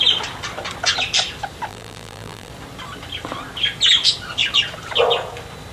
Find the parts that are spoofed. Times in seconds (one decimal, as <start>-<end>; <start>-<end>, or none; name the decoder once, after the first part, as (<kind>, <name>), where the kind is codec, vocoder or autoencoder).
1.7-2.5 (vocoder, BigVGAN v2)